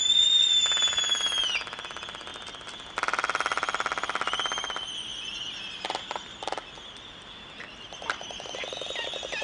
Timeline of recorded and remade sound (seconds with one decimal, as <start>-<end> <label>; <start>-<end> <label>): 0.0-7.7 recorded; 7.7-9.0 remade; 9.0-9.4 recorded